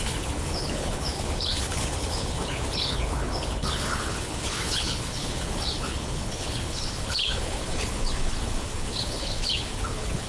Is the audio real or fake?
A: fake